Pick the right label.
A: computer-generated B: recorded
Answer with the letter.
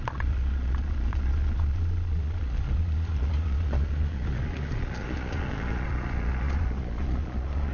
A